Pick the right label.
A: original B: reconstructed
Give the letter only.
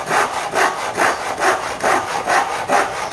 A